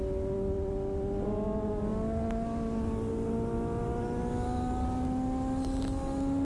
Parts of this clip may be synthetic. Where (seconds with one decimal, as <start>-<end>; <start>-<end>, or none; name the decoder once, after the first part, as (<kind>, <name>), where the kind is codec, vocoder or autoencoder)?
none